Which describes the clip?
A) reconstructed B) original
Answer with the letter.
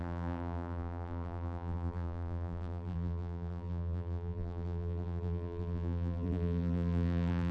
A